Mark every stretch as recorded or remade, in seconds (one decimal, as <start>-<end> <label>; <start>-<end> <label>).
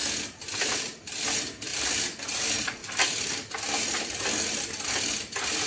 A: 0.0-5.7 recorded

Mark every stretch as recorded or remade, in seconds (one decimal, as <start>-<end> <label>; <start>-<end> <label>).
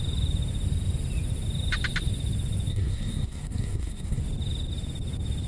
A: 0.0-2.7 recorded; 2.7-4.2 remade; 4.2-5.5 recorded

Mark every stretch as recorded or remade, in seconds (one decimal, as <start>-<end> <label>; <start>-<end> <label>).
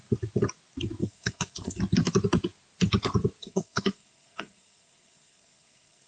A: 0.0-1.0 recorded; 1.0-1.8 remade; 1.8-3.4 recorded; 3.4-6.1 remade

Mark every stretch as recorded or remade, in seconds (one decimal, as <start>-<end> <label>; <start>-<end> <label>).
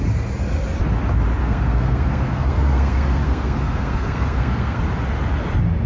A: 0.0-1.4 recorded; 1.4-4.8 remade; 4.8-5.9 recorded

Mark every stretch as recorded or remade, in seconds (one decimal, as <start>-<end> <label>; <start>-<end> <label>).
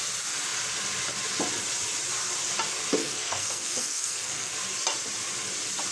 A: 0.0-3.0 recorded; 3.0-4.5 remade; 4.5-5.9 recorded